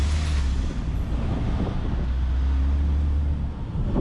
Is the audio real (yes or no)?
yes